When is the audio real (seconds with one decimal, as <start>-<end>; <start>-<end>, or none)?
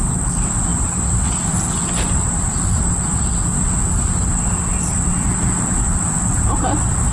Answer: 0.0-7.1